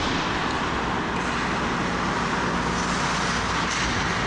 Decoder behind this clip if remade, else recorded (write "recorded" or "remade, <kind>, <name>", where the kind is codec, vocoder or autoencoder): recorded